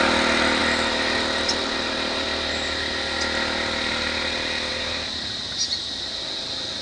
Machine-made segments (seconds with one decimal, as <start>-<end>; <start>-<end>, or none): none